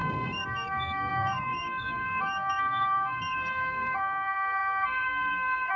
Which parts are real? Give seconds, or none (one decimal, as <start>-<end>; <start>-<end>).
none